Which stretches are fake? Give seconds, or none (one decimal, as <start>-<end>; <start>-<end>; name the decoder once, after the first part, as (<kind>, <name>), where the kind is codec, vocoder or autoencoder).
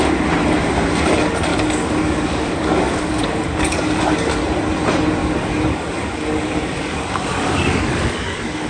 1.5-4.4 (codec, DAC); 5.2-8.7